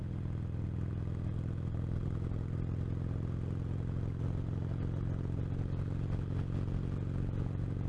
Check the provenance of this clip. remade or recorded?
recorded